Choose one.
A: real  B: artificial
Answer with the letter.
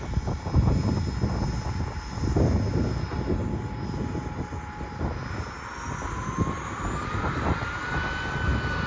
A